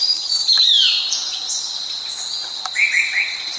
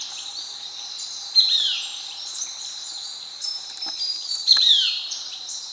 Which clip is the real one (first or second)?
first